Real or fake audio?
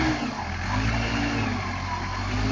real